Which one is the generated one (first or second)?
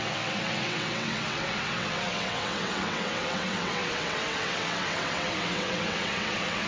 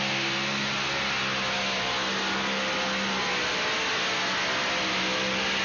first